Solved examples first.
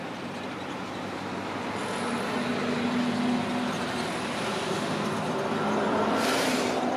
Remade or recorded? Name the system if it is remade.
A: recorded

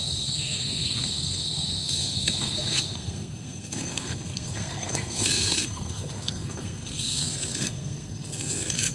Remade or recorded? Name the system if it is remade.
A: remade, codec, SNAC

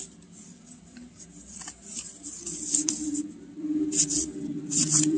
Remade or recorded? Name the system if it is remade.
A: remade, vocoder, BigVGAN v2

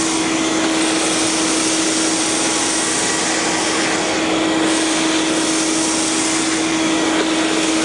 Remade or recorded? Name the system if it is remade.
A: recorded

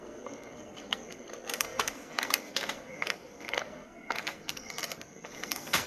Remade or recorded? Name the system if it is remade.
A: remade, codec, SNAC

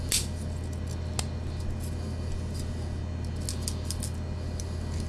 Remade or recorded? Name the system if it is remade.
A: recorded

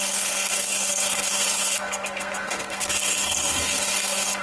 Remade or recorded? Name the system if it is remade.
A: remade, codec, SNAC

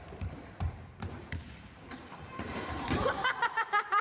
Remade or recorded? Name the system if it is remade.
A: remade, vocoder, BigVGAN v2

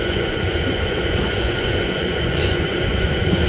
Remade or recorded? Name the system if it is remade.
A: remade, vocoder, Vocos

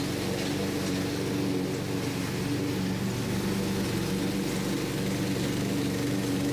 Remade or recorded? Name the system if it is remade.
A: recorded